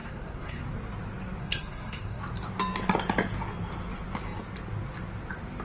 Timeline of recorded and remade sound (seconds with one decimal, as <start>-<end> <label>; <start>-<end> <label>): 0.0-0.6 remade; 0.6-1.4 recorded; 1.4-2.2 remade; 2.2-5.6 recorded